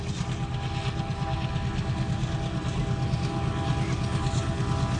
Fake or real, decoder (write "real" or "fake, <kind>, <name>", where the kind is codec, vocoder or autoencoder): real